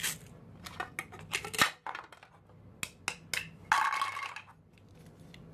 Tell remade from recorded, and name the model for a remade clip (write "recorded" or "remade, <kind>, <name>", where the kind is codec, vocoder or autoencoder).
recorded